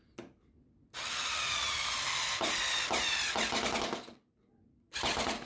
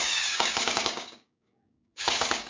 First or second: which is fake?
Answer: second